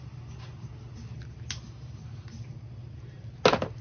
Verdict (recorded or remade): recorded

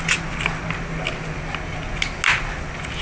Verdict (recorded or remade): recorded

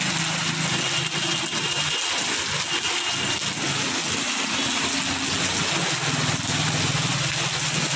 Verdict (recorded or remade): recorded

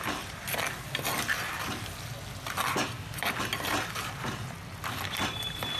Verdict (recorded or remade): recorded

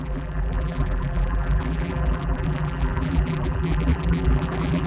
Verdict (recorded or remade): remade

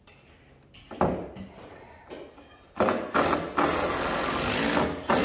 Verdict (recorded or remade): recorded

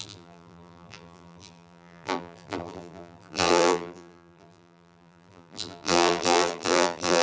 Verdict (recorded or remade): remade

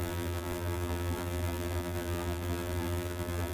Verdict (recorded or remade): remade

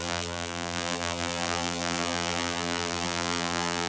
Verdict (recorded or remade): remade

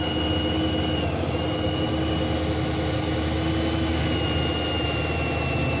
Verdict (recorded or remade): recorded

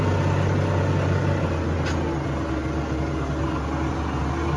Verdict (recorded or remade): recorded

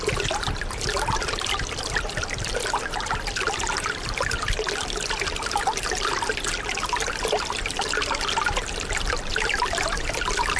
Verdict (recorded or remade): recorded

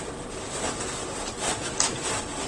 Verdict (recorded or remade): remade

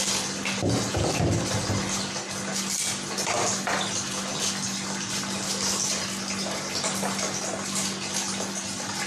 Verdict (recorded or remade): recorded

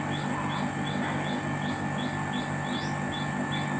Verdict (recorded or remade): recorded